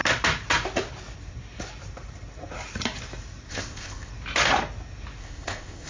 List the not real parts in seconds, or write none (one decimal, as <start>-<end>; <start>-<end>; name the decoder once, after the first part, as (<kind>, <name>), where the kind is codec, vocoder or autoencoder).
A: 3.5-4.1 (codec, ZipCodec); 5.2-5.9